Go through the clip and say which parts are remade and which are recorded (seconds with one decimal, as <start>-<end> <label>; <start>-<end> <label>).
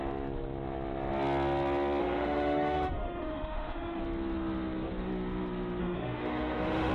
0.0-2.0 recorded; 2.0-4.0 remade; 4.0-5.8 recorded; 5.8-6.9 remade